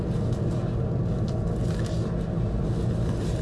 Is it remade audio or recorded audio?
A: recorded